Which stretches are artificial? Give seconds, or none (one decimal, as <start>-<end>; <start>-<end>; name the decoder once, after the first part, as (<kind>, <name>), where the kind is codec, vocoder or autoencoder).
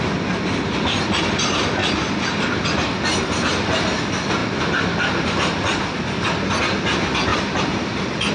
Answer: 1.8-2.6 (vocoder, BigVGAN v2); 7.3-8.3